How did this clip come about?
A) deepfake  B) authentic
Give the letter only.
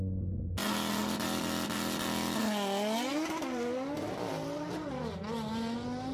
B